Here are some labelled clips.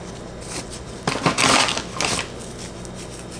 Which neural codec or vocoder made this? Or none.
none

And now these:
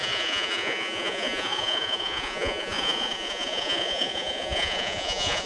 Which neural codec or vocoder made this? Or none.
vocoder, Vocos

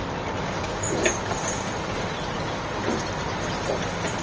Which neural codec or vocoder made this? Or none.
none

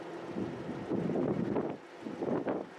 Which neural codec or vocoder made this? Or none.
none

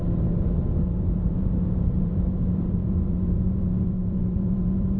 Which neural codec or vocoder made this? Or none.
vocoder, BigVGAN v2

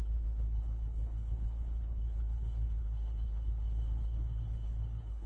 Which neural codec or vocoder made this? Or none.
codec, HILCodec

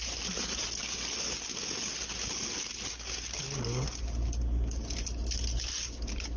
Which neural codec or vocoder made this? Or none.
none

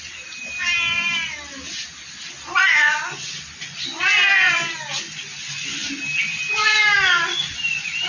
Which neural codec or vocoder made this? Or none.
none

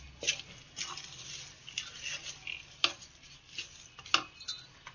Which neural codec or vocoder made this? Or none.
none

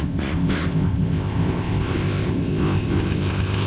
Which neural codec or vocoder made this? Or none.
codec, ZipCodec